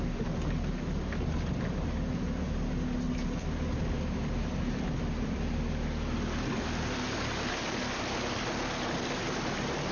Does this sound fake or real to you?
real